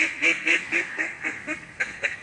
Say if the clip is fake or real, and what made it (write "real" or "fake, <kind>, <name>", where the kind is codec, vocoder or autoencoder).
fake, codec, SNAC